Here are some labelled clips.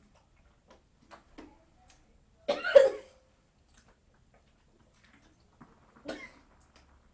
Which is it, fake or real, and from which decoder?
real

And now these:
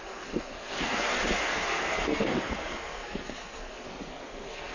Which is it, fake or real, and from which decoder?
fake, codec, SNAC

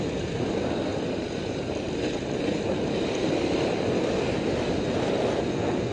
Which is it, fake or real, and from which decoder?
real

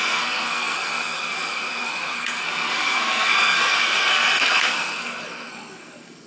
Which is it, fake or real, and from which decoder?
fake, codec, SNAC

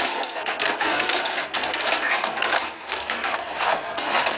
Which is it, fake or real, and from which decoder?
fake, codec, SNAC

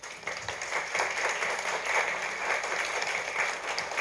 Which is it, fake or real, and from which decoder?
real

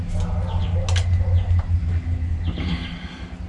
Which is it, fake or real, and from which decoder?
real